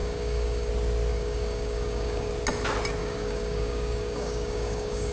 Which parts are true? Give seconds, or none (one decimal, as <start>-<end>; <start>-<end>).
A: 0.7-1.1; 2.3-3.0